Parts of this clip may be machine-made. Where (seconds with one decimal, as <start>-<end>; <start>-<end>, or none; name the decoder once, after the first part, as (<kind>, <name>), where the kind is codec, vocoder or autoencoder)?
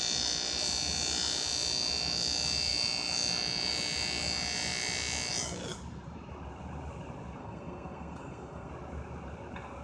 7.4-8.7 (codec, SNAC)